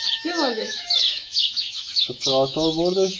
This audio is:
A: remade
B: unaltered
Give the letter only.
A